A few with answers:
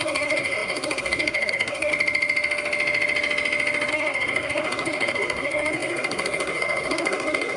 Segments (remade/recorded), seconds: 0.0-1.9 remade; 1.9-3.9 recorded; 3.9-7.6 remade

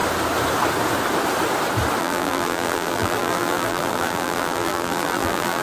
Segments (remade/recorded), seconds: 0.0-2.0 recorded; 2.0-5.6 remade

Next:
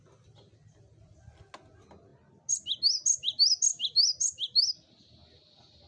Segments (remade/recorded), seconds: 0.0-5.9 recorded

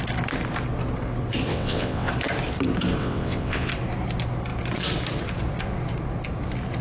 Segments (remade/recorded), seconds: 0.0-1.5 recorded; 1.5-2.1 remade; 2.1-3.0 recorded; 3.0-3.7 remade; 3.7-6.8 recorded

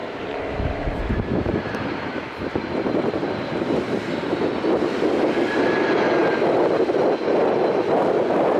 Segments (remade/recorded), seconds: 0.0-4.5 remade; 4.5-8.6 recorded

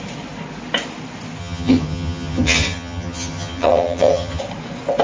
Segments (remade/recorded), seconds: 0.0-1.4 recorded; 1.4-4.4 remade; 4.4-5.0 recorded

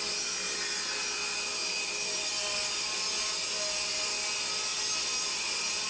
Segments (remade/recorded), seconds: 0.0-5.9 recorded